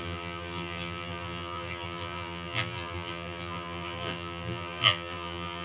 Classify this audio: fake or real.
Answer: fake